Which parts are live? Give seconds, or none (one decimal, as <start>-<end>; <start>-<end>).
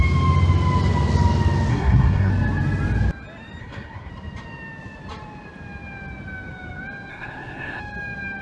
0.0-1.7; 2.3-3.6; 4.1-7.1; 7.8-8.4